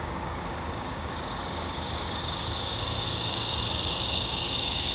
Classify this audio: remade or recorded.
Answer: remade